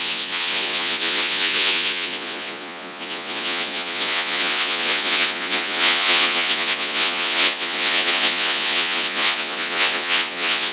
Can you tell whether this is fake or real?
fake